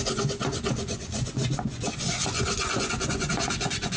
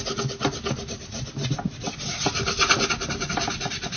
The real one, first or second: second